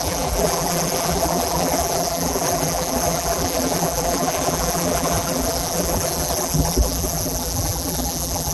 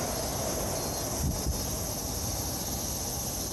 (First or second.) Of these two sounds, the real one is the second